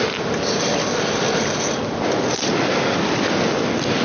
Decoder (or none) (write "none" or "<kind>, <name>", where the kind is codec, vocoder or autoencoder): none